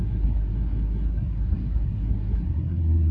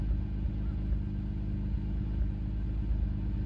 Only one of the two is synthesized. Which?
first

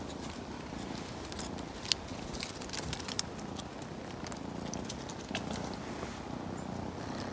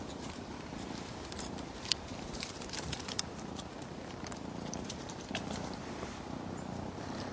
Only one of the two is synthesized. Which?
second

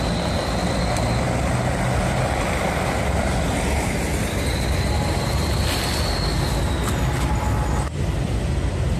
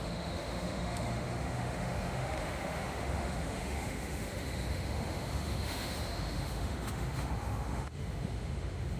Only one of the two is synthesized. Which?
second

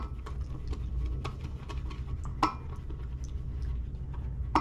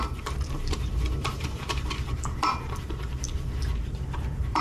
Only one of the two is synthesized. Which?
second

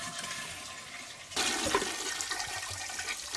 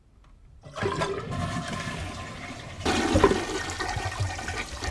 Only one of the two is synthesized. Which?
second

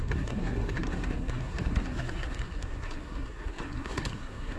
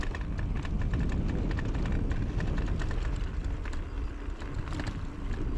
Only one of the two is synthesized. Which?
first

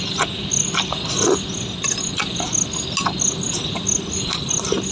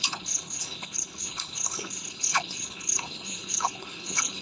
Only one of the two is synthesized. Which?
second